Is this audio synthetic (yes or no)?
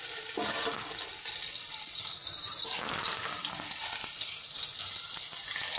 no